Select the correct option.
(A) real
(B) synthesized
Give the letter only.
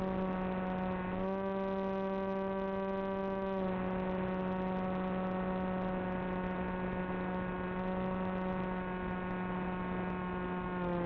A